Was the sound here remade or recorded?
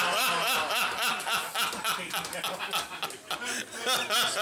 recorded